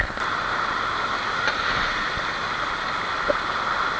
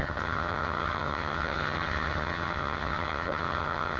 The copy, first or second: second